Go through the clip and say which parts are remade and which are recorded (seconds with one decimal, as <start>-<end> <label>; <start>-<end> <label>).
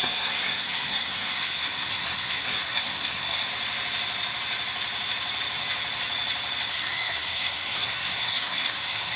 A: 0.0-3.5 remade; 3.5-6.7 recorded; 6.7-9.2 remade